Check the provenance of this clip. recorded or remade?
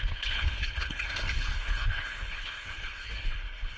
remade